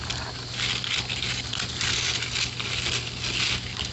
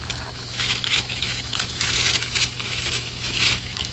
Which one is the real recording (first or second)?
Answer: first